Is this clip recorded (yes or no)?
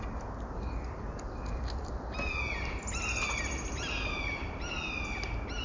yes